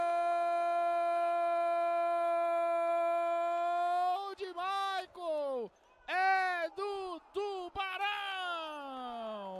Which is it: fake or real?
real